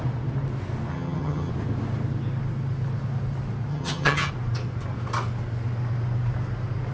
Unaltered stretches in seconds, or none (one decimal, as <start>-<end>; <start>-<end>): 0.0-0.9; 1.5-3.7; 4.3-6.9